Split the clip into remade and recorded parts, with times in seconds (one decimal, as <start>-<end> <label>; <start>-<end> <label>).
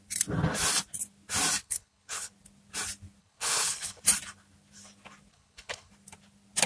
0.0-1.6 recorded; 1.6-2.3 remade; 2.3-3.2 recorded; 3.2-4.0 remade; 4.0-5.3 recorded; 5.3-5.9 remade; 5.9-6.7 recorded